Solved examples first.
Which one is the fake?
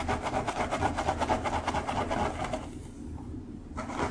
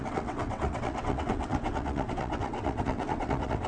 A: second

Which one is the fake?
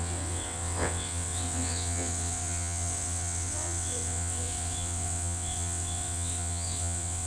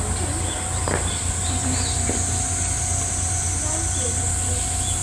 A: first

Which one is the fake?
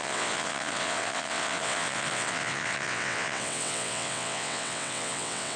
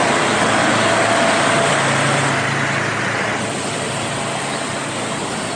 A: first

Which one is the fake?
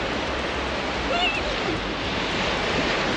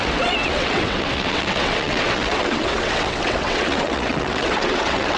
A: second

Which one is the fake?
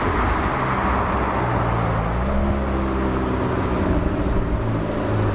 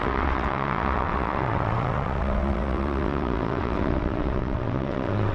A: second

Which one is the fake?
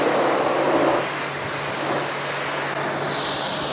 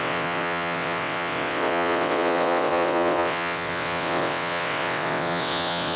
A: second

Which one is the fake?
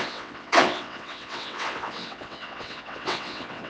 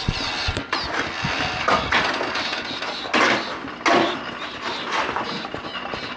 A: first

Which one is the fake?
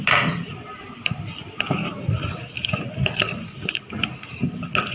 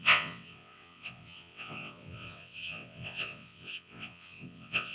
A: second